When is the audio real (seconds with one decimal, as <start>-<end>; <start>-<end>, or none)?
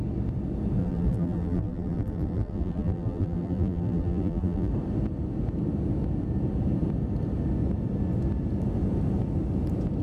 0.0-0.8; 4.7-10.0